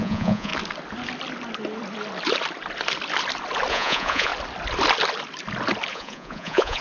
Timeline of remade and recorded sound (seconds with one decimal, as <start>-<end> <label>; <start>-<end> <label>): 0.0-0.5 remade; 0.5-3.7 recorded; 3.7-4.3 remade; 4.3-5.9 recorded; 5.9-6.8 remade